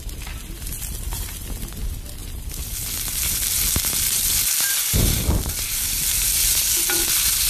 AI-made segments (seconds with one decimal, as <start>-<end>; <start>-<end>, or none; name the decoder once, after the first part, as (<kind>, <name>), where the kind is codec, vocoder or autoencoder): 2.2-6.6 (vocoder, BigVGAN v2)